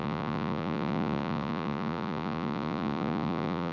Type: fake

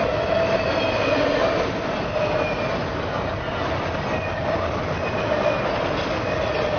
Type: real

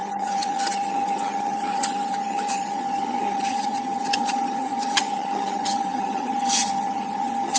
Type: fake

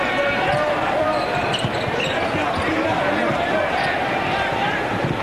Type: real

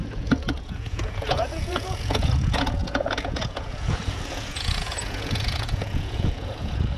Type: fake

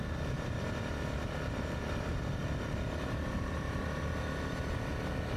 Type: real